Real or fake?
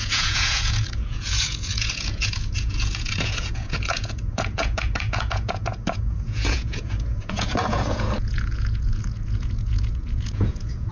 fake